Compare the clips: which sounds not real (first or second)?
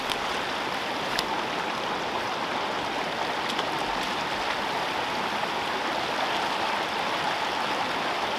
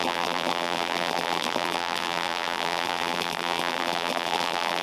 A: second